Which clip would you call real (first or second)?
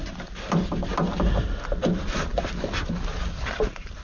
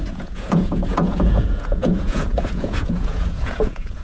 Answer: first